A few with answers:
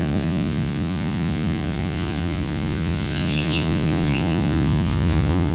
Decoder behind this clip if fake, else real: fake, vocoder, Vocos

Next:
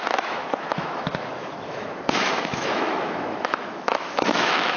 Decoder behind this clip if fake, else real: fake, autoencoder, DAC-VAE